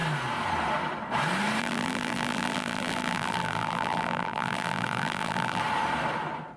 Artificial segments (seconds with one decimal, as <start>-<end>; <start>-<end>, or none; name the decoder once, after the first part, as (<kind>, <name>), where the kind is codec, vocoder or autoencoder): 1.6-5.6 (vocoder, BigVGAN v2)